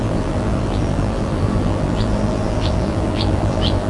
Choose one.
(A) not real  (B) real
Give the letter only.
A